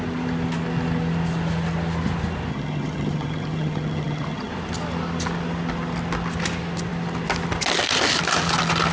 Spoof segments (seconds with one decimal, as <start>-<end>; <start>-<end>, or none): 2.5-4.5